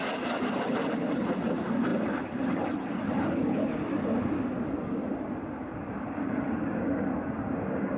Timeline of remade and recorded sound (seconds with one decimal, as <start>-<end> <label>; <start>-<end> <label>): 0.0-8.0 recorded